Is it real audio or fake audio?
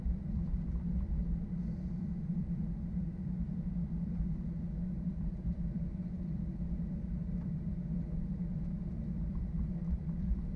fake